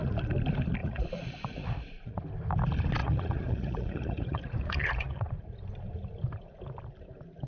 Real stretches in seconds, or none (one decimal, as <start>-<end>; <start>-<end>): 0.0-0.8; 2.2-3.0; 5.4-7.5